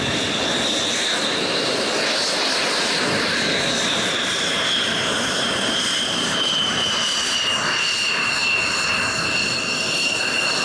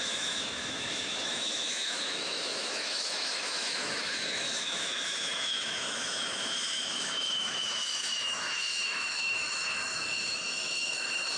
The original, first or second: first